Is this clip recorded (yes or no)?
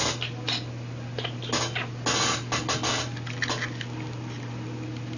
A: yes